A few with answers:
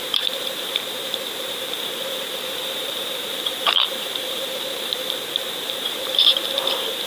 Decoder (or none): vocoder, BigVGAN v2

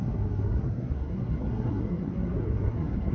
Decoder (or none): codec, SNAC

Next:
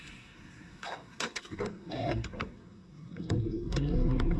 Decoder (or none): codec, SNAC